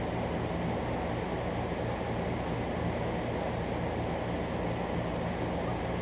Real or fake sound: real